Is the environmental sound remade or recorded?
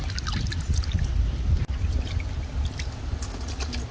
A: recorded